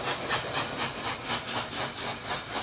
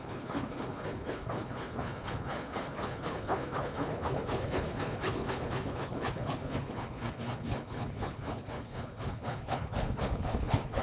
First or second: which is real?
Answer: first